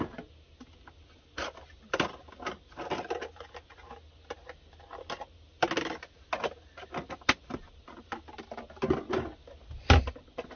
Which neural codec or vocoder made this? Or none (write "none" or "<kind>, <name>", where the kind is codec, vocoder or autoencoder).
none